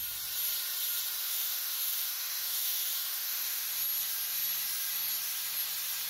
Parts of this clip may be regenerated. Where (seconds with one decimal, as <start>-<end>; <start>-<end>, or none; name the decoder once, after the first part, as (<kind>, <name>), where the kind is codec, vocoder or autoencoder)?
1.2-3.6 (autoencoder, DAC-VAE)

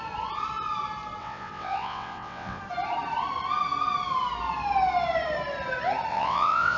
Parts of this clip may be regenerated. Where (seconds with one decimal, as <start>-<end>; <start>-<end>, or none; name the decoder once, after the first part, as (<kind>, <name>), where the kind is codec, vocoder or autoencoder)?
1.2-2.6 (vocoder, WaveNeXt); 6.1-6.8

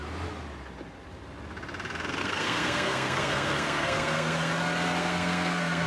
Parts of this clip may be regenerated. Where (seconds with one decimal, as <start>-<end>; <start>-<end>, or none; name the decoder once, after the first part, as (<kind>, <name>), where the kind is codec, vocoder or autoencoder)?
2.2-4.5 (codec, SNAC); 5.0-5.9

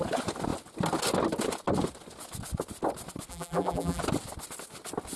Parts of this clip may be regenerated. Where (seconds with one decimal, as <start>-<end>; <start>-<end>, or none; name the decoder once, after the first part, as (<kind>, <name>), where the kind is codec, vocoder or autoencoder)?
3.3-4.0 (vocoder, BigVGAN v2)